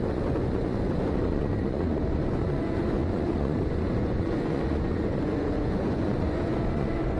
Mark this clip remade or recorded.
remade